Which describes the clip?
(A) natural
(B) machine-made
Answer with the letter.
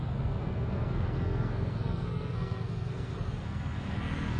B